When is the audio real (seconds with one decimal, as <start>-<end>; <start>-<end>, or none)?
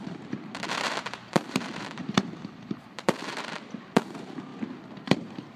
4.5-5.0